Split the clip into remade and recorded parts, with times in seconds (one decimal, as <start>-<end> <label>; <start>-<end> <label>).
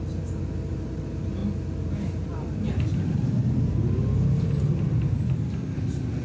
0.0-6.2 recorded